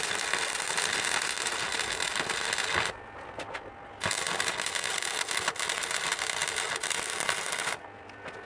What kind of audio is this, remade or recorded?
recorded